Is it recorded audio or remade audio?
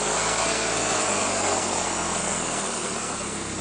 remade